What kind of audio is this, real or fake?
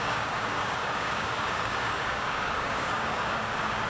fake